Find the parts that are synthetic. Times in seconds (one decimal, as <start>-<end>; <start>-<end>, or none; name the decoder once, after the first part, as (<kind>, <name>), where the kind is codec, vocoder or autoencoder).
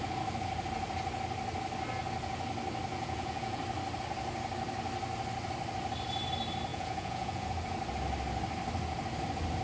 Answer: 2.9-3.6 (vocoder, Vocos); 6.7-7.5